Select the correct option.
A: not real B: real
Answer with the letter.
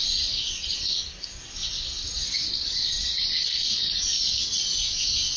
B